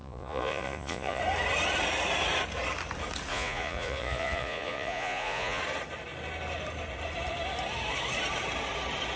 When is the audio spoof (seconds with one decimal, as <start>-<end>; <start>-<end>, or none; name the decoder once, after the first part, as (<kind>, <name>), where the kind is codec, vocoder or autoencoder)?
0.0-1.2 (vocoder, Vocos); 3.3-5.6